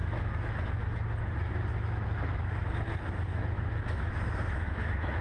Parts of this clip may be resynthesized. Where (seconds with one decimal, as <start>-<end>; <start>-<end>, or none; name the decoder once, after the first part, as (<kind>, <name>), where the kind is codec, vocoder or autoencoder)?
0.0-0.5 (autoencoder, DAC-VAE); 1.7-2.7; 3.3-5.2